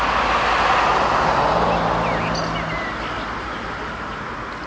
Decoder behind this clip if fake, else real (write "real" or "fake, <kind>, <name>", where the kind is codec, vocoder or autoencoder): real